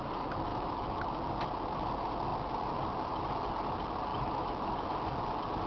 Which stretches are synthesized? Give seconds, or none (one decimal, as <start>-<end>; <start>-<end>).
0.5-1.1; 4.1-4.7